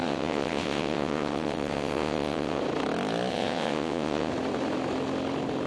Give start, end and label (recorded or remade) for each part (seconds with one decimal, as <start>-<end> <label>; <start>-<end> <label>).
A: 0.0-2.6 remade; 2.6-3.3 recorded; 3.3-4.3 remade; 4.3-5.7 recorded